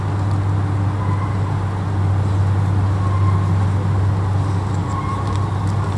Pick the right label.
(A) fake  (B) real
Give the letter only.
B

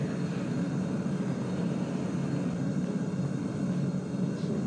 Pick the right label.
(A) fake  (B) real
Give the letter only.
B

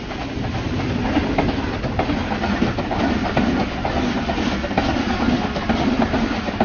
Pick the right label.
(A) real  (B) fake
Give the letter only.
A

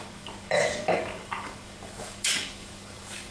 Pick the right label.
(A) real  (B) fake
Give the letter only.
B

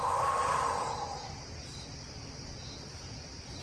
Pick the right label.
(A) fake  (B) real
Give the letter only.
B